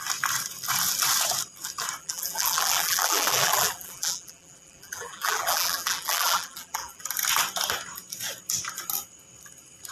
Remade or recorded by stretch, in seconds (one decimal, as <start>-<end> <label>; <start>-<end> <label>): 0.0-2.0 recorded; 2.0-7.0 remade; 7.0-9.9 recorded

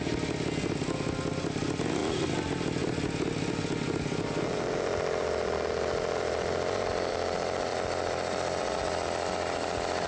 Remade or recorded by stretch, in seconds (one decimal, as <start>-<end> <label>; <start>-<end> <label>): 0.0-10.1 recorded

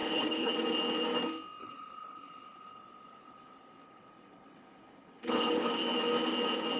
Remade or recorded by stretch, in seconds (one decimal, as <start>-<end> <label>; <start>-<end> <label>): 0.0-0.5 remade; 0.5-1.6 recorded; 1.6-5.7 remade; 5.7-6.8 recorded

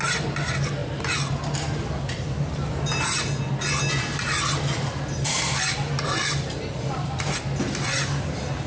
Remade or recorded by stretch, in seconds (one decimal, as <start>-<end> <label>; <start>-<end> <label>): 0.0-8.7 recorded

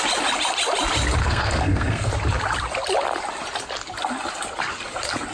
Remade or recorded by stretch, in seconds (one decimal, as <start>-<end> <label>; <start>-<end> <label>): 0.0-1.2 recorded; 1.2-2.1 remade; 2.1-5.3 recorded

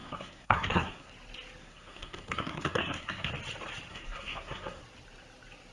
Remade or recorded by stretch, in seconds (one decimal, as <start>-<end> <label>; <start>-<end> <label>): 0.0-1.1 remade; 1.1-1.6 recorded; 1.6-3.3 remade; 3.3-3.9 recorded; 3.9-4.8 remade; 4.8-5.7 recorded

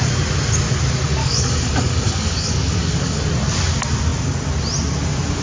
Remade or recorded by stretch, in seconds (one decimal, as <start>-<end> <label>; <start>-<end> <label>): 0.0-1.2 recorded; 1.2-3.2 remade; 3.2-5.4 recorded